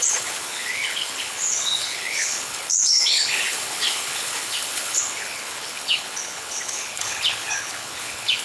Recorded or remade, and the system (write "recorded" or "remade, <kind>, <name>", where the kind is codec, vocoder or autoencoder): remade, codec, HILCodec